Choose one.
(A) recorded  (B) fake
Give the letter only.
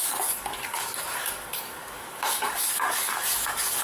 B